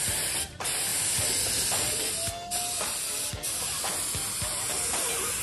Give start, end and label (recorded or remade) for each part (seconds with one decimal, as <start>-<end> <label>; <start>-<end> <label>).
0.0-5.4 recorded